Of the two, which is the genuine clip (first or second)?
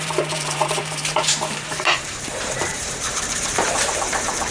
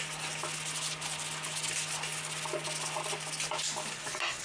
second